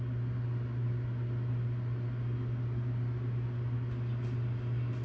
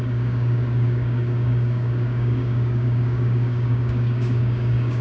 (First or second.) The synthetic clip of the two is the second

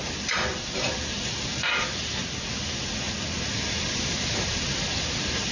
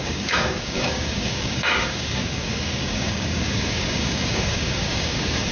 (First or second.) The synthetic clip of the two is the second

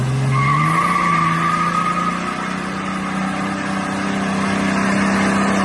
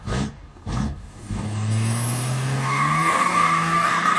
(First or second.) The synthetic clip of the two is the second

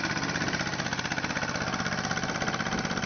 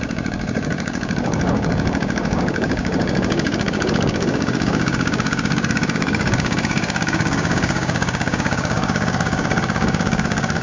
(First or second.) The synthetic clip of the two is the second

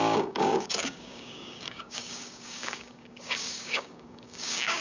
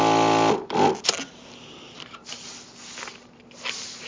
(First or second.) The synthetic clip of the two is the first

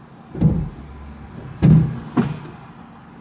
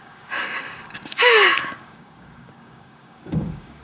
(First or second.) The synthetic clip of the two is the second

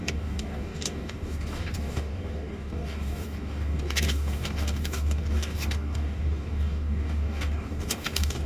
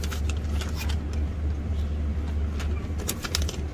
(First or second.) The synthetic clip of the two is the first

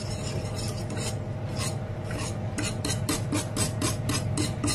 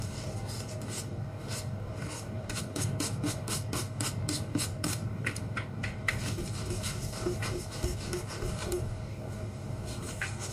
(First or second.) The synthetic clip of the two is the second